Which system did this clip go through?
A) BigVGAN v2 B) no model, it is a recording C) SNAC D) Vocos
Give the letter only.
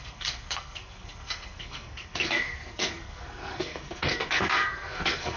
C